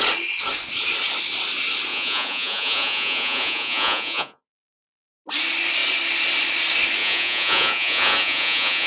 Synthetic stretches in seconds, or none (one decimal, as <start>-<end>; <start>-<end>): 1.9-4.4; 7.0-8.9